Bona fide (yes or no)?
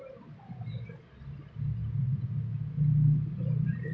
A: yes